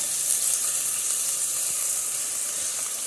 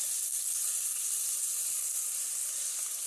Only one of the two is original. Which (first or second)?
second